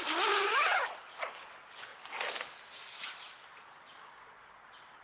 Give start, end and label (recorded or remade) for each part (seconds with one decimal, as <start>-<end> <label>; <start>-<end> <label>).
0.0-1.9 remade; 1.9-4.5 recorded; 4.5-5.0 remade